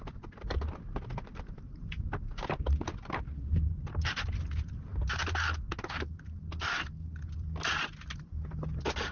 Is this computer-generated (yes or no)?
no